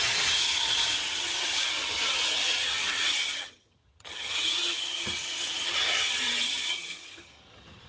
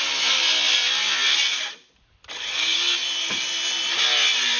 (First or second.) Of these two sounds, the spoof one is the first